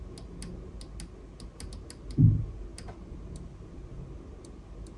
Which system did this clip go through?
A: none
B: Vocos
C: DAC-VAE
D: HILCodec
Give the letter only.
A